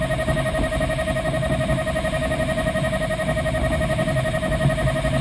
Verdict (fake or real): real